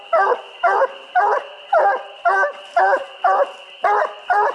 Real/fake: real